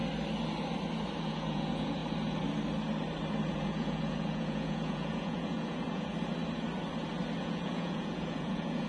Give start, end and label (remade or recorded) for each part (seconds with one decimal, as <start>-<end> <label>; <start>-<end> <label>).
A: 0.0-1.2 recorded; 1.2-2.0 remade; 2.0-3.5 recorded; 3.5-6.1 remade; 6.1-7.4 recorded; 7.4-8.9 remade